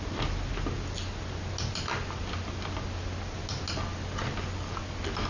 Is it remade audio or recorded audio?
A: recorded